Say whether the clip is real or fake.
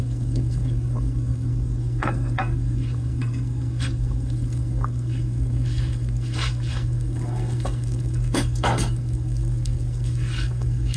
fake